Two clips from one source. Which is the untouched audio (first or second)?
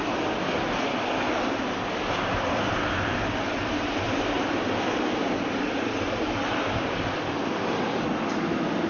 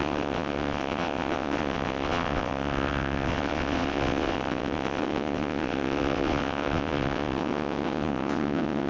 first